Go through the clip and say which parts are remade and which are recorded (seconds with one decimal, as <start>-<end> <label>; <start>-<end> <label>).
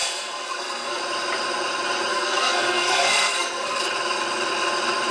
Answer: 0.0-1.0 remade; 1.0-2.1 recorded; 2.1-3.8 remade; 3.8-5.1 recorded